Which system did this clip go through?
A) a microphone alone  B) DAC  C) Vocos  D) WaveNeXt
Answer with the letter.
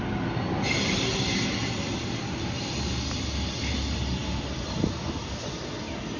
A